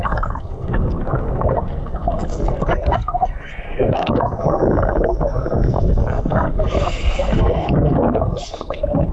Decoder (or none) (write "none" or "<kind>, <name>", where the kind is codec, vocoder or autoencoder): codec, SNAC